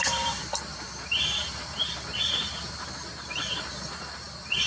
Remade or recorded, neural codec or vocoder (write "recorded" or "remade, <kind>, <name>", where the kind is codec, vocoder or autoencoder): remade, vocoder, BigVGAN v2